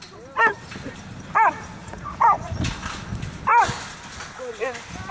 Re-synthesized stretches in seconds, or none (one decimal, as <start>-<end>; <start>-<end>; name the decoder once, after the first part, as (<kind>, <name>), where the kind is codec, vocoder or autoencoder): 1.8-2.6 (vocoder, Vocos)